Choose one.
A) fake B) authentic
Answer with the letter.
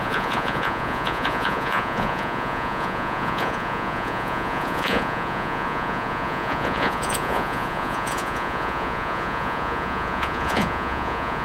A